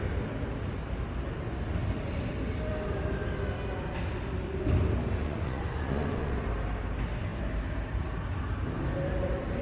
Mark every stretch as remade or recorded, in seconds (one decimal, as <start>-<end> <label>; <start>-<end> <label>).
0.0-5.2 recorded; 5.2-6.4 remade; 6.4-9.6 recorded